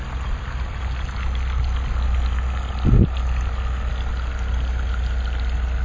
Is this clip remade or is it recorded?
recorded